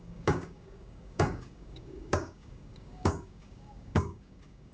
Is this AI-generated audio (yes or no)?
yes